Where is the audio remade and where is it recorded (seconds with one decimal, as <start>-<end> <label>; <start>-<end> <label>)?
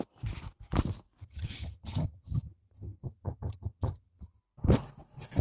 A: 0.0-1.2 recorded; 1.2-4.4 remade; 4.4-5.4 recorded